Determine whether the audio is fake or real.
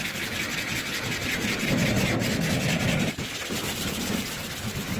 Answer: real